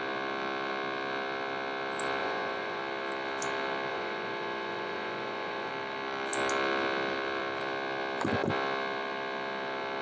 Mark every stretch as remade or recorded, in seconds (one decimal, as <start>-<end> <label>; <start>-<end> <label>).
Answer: 0.0-2.2 recorded; 2.2-2.8 remade; 2.8-3.9 recorded; 3.9-5.7 remade; 5.7-10.0 recorded